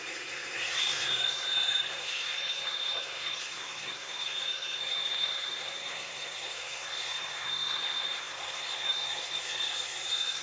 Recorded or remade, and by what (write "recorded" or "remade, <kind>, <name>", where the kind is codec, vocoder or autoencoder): remade, codec, SNAC